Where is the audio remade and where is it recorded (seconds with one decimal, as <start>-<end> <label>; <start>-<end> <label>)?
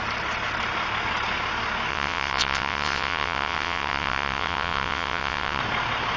0.0-1.9 recorded; 1.9-5.6 remade; 5.6-6.2 recorded